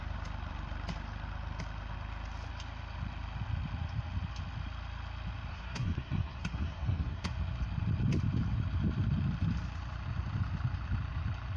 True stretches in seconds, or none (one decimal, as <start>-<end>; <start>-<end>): 0.0-5.5; 7.3-11.6